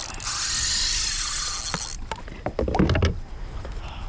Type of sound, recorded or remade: recorded